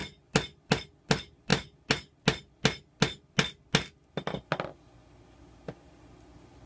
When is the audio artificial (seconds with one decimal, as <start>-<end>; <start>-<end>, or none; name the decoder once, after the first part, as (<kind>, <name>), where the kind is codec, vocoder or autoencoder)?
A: none